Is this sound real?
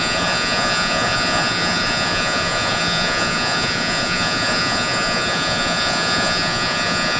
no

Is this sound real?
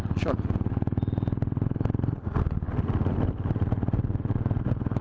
yes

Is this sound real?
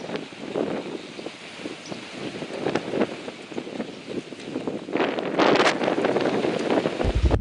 yes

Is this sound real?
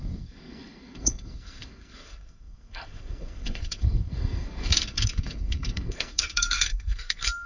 no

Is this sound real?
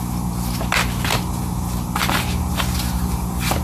yes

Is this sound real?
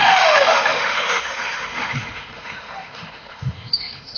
no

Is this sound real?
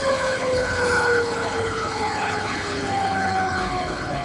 no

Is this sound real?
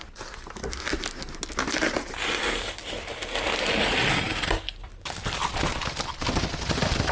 yes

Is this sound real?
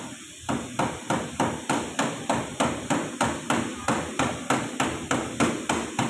yes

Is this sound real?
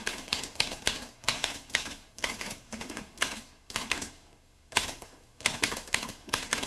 no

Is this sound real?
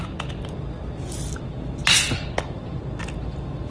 yes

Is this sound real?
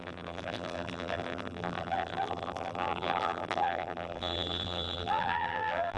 no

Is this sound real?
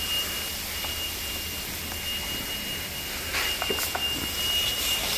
yes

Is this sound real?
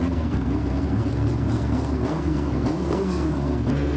no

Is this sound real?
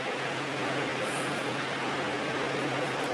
yes